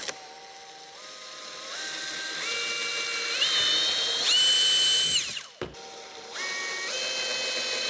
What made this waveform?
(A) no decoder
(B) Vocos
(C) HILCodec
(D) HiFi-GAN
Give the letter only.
A